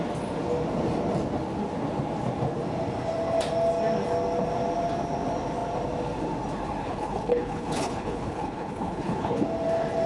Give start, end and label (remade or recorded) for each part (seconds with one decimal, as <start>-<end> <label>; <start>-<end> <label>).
0.0-6.8 recorded; 6.8-9.4 remade; 9.4-10.1 recorded